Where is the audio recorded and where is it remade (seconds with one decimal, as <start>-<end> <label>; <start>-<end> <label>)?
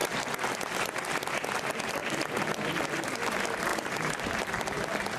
0.0-5.2 recorded